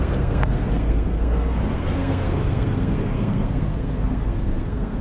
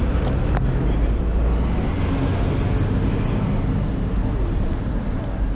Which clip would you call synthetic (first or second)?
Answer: first